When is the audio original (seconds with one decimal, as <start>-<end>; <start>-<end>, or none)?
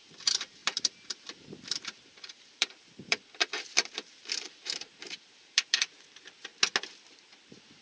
6.5-7.1